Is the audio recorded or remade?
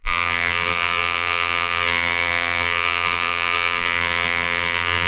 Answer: remade